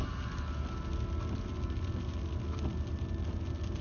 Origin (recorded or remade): recorded